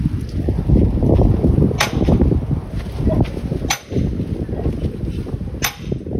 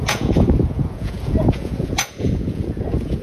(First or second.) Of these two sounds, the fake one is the second